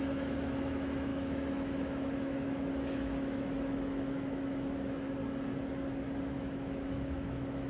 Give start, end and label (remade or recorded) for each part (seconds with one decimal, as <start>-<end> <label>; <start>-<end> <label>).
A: 0.0-5.2 remade; 5.2-6.2 recorded; 6.2-7.7 remade